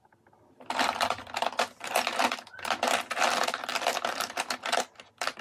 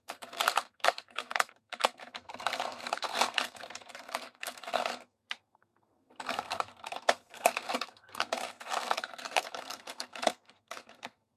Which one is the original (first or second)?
first